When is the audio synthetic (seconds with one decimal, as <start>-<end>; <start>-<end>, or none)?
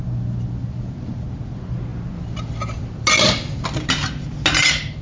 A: none